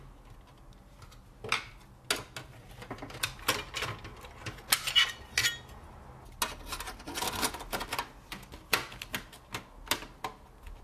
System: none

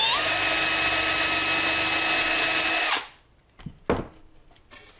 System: none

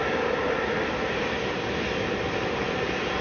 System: none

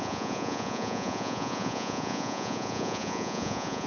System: vocoder, Vocos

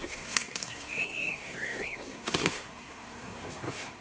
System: codec, SNAC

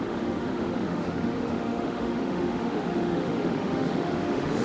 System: autoencoder, DAC-VAE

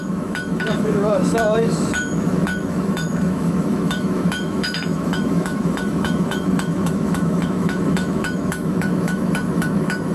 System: autoencoder, DAC-VAE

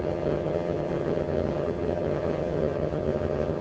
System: vocoder, HiFi-GAN